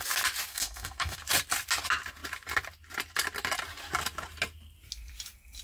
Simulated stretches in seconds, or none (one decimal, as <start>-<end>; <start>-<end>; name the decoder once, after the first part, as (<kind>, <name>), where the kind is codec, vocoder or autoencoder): 0.5-1.2 (codec, SNAC)

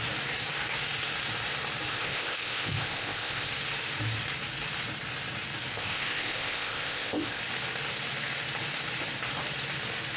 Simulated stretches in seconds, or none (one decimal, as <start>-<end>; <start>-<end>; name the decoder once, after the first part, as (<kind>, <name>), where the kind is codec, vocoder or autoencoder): 1.9-3.5 (codec, ZipCodec); 5.7-7.4

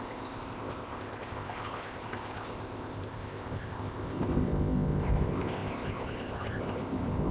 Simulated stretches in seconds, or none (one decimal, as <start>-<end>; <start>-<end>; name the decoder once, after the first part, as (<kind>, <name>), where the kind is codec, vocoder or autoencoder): 0.0-7.3 (codec, ZipCodec)

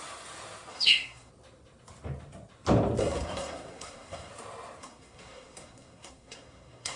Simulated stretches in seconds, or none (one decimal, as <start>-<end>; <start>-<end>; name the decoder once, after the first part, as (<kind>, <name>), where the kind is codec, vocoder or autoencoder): 0.7-1.3 (codec, SNAC); 3.0-4.3; 4.8-7.0

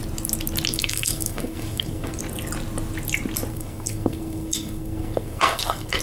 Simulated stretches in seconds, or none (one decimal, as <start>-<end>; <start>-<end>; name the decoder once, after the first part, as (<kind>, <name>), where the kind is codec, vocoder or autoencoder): 0.7-2.2 (codec, SNAC); 3.5-6.0